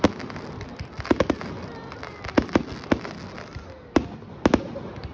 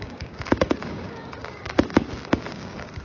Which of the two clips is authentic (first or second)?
first